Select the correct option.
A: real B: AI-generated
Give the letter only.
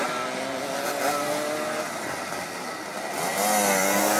A